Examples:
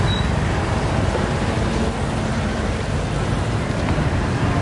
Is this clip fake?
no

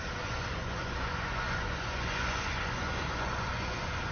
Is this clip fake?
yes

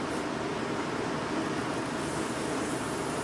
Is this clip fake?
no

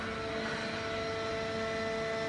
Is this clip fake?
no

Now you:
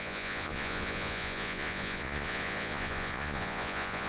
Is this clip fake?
yes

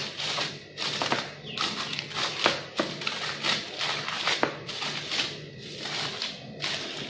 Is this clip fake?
no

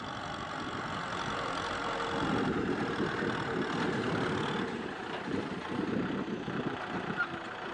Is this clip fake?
no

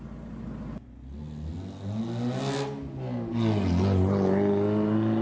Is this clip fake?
no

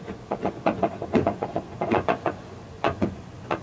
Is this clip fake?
yes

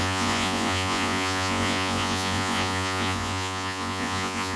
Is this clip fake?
yes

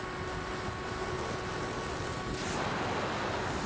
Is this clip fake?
no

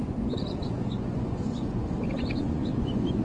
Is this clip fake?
yes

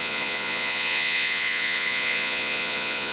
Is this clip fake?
yes